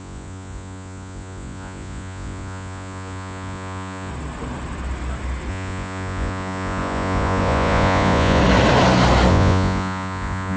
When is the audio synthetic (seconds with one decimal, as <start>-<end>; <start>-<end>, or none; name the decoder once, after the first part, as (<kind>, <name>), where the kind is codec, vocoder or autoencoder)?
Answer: 0.0-4.1 (vocoder, Vocos); 5.5-8.4; 9.3-10.6